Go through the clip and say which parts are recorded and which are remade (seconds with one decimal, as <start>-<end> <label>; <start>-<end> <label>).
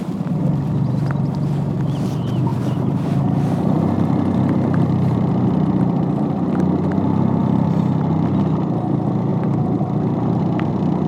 0.0-2.5 recorded; 2.5-5.3 remade; 5.3-9.3 recorded; 9.3-10.7 remade; 10.7-11.1 recorded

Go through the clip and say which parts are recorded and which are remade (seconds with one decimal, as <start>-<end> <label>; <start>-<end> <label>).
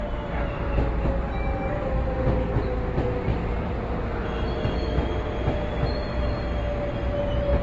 0.0-7.6 recorded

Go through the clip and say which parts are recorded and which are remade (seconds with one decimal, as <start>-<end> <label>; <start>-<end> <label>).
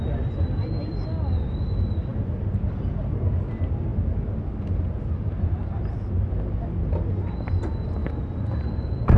0.0-8.0 recorded; 8.0-9.2 remade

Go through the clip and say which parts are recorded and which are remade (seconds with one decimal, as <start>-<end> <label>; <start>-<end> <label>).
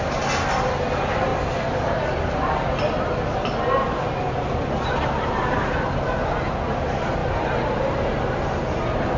0.0-1.3 recorded; 1.3-2.0 remade; 2.0-7.2 recorded; 7.2-7.8 remade; 7.8-9.2 recorded